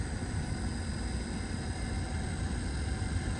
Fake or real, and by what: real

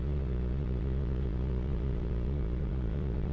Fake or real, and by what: fake, vocoder, Vocos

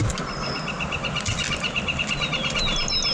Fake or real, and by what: real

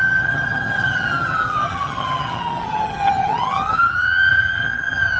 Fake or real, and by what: fake, vocoder, HiFi-GAN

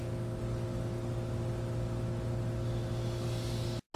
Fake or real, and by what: real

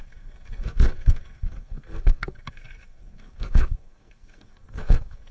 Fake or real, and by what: fake, codec, SNAC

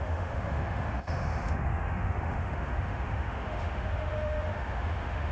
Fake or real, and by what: fake, autoencoder, DAC-VAE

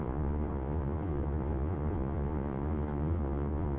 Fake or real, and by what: fake, vocoder, Vocos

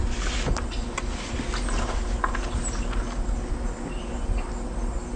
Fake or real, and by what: real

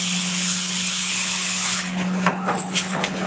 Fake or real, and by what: fake, codec, HILCodec